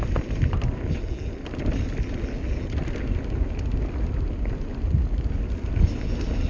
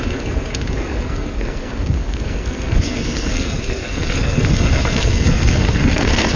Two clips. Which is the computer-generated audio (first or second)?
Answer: second